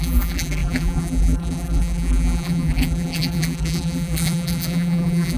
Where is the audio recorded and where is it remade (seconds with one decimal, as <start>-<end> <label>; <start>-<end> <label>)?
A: 0.0-5.4 remade